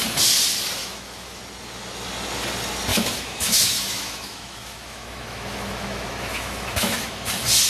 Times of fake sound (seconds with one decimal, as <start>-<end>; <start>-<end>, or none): 0.8-1.4; 2.9-7.3